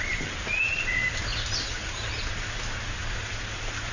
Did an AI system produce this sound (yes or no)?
yes